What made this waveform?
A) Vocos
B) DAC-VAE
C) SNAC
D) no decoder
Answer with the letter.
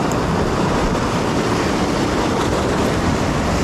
D